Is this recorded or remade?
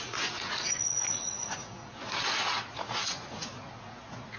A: remade